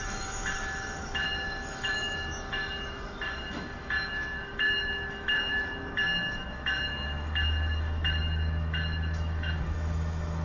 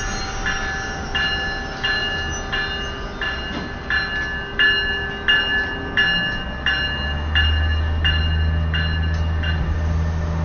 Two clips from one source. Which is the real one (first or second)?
second